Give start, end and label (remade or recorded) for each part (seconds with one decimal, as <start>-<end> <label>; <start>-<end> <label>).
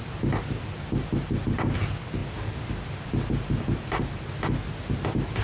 0.0-5.4 recorded